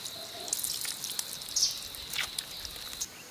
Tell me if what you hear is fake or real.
real